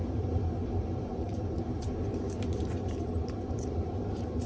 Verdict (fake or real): fake